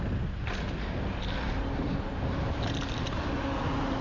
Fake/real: real